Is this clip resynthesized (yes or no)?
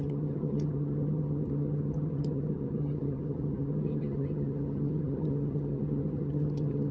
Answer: yes